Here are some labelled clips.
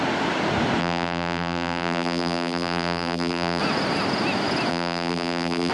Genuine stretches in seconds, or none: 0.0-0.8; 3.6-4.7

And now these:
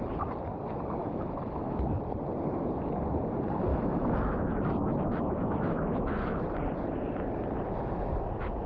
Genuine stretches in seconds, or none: 0.0-1.0; 2.0-3.7; 6.4-8.7

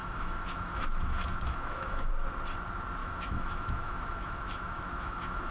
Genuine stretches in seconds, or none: 2.1-3.0

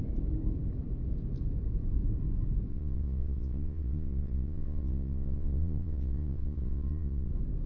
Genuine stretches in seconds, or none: 0.0-2.7; 7.3-7.7

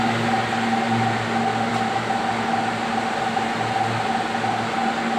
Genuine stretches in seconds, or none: 0.0-1.7; 2.2-5.2

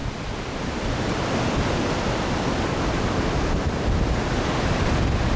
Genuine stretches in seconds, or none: 1.1-5.4